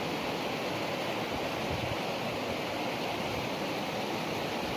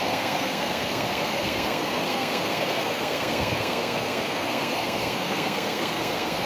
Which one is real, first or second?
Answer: first